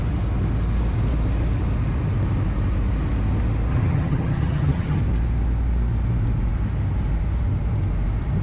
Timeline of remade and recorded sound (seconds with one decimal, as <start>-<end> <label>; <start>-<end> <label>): 0.0-3.7 recorded; 3.7-5.0 remade; 5.0-8.4 recorded